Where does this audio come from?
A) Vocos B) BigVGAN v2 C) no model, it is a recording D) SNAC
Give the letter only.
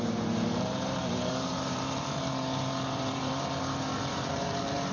B